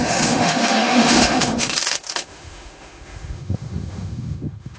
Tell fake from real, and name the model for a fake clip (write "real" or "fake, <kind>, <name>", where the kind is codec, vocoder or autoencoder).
fake, autoencoder, DAC-VAE